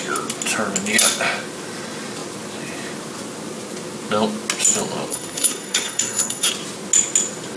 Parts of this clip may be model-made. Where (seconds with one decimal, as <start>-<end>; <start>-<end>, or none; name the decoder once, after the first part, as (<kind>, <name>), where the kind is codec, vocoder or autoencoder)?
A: 5.1-6.5 (codec, SNAC)

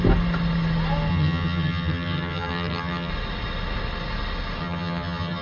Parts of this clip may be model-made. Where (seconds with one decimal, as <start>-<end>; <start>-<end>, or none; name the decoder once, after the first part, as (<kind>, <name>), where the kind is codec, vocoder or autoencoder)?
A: 1.1-3.1 (vocoder, HiFi-GAN); 4.6-5.4

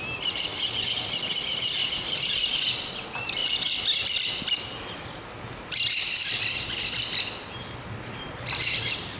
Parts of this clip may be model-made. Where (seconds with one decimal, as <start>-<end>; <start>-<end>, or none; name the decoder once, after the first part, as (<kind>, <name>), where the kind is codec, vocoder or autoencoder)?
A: 0.0-3.4 (vocoder, BigVGAN v2); 7.5-9.2

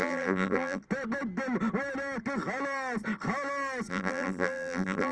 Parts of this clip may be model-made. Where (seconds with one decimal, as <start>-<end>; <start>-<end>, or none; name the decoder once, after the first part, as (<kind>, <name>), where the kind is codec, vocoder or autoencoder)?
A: 0.0-0.8 (vocoder, BigVGAN v2); 3.9-5.1

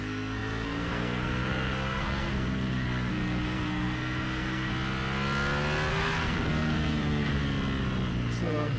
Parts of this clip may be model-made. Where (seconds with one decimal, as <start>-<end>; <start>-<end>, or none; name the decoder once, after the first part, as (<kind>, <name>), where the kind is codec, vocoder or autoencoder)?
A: 0.0-4.7 (codec, SNAC); 5.9-7.4; 8.1-8.8

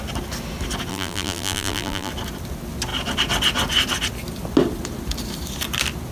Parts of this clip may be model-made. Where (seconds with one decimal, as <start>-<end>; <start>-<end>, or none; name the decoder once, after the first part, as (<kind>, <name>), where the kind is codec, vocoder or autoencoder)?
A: 0.9-2.1 (vocoder, BigVGAN v2)

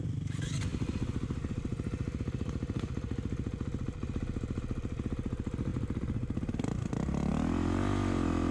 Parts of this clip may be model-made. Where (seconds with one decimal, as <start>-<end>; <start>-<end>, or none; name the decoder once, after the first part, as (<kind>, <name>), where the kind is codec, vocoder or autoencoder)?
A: none